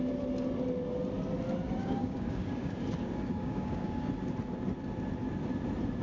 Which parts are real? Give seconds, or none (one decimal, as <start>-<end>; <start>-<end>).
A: 0.0-1.8; 4.1-6.0